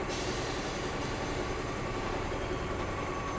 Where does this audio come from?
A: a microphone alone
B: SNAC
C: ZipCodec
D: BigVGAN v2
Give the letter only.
D